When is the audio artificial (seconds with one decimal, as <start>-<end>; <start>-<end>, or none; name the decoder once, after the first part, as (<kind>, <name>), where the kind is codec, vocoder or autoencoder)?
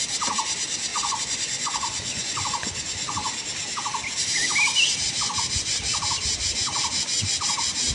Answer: 0.9-3.3 (vocoder, Vocos)